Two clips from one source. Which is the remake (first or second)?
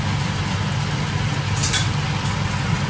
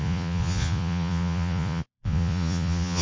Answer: second